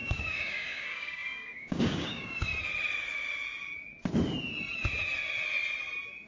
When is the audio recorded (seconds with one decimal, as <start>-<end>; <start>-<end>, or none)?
2.5-6.3